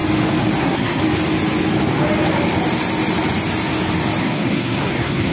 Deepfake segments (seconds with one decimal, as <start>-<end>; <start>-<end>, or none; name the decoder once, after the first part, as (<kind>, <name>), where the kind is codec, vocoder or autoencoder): 0.6-1.0 (codec, SNAC); 4.2-5.3